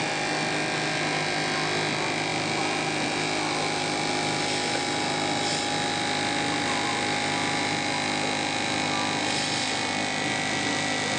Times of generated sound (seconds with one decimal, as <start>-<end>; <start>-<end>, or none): none